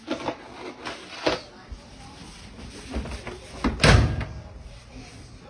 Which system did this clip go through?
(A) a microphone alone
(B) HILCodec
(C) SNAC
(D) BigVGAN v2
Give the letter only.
A